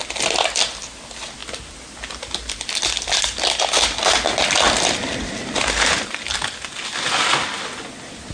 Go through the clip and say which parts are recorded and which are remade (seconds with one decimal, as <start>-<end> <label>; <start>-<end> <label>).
0.0-8.3 recorded